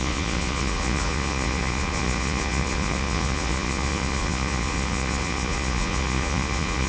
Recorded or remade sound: remade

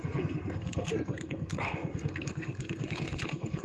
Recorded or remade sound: remade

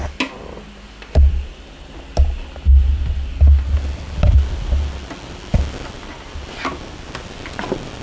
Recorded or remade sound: recorded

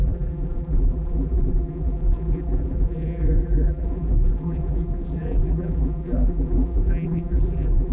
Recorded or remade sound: remade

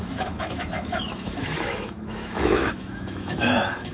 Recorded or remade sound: remade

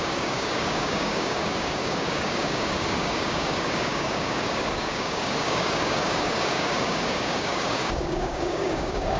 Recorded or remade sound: remade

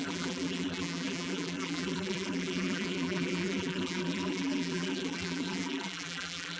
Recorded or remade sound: remade